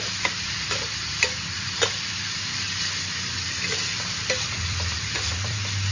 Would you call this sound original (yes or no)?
no